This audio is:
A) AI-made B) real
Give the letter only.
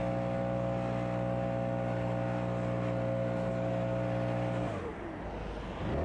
B